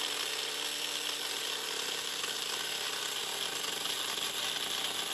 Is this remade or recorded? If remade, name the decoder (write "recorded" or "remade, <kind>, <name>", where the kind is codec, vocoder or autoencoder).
recorded